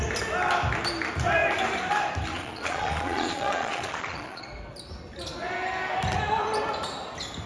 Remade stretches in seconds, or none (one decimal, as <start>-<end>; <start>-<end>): 2.3-4.4